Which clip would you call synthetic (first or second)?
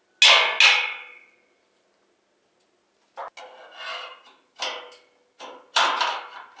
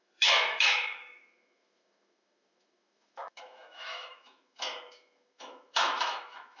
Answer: second